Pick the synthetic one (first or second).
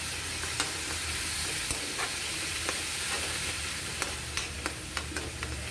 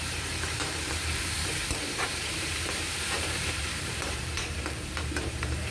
second